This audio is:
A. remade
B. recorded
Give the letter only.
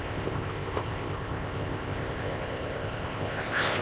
A